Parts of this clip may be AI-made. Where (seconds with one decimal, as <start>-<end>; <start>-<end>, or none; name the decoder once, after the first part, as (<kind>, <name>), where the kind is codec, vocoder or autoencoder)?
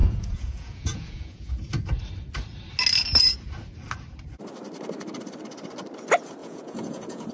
0.0-1.5 (vocoder, Vocos); 6.4-7.3